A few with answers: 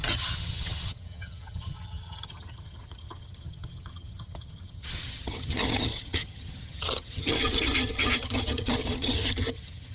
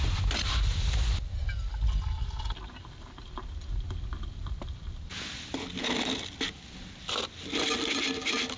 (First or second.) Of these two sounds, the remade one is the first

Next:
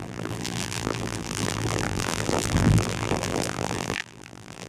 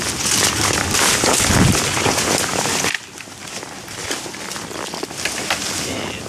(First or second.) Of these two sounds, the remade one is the first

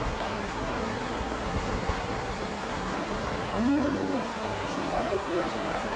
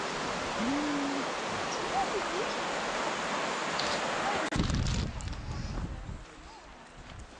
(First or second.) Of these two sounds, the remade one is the first